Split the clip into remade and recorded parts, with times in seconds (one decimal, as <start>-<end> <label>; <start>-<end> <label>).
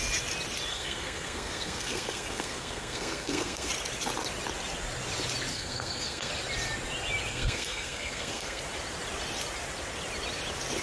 0.0-0.7 recorded; 0.7-3.7 remade; 3.7-5.5 recorded; 5.5-6.3 remade; 6.3-7.3 recorded; 7.3-8.6 remade; 8.6-10.8 recorded